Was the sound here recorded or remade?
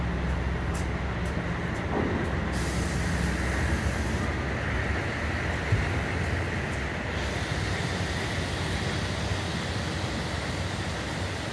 recorded